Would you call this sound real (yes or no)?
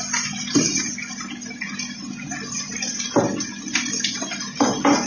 yes